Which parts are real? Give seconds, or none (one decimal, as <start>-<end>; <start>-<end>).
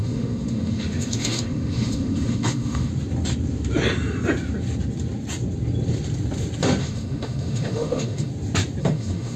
2.9-6.8; 8.3-8.8